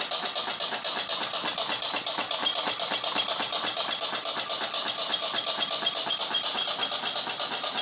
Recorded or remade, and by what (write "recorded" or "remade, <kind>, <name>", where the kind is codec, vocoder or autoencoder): recorded